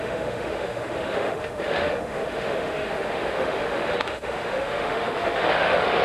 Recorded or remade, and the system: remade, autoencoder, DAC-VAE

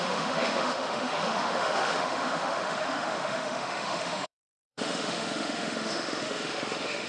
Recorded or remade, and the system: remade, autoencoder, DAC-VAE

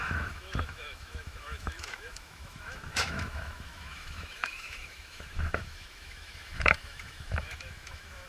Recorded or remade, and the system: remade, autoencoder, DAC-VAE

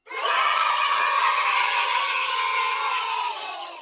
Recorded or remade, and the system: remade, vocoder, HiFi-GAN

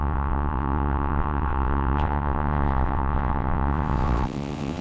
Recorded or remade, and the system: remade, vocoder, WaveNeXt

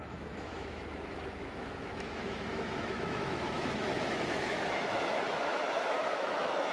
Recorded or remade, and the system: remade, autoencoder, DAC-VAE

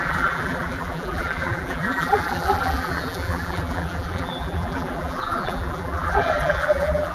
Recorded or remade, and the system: remade, vocoder, BigVGAN v2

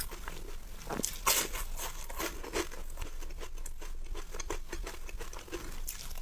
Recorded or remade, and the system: recorded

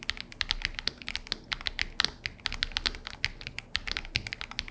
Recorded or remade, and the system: recorded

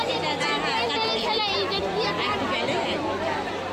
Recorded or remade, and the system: recorded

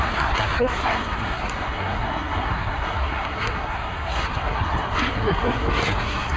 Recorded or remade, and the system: remade, codec, SNAC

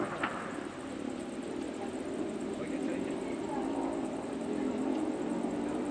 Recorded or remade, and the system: remade, vocoder, BigVGAN v2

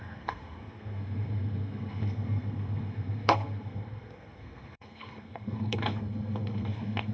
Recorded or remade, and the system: remade, codec, SNAC